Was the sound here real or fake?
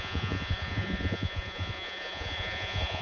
fake